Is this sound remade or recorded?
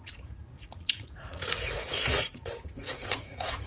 remade